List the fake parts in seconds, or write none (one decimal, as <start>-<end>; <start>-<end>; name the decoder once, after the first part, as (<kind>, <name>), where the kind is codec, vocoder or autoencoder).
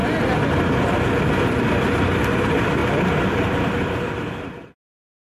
none